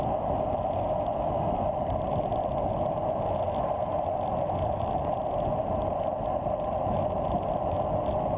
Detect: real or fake real